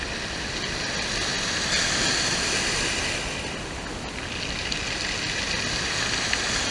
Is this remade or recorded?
recorded